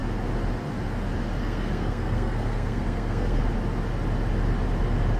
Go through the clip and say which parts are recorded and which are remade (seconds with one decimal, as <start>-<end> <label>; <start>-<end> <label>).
0.0-1.4 recorded; 1.4-3.4 remade; 3.4-5.2 recorded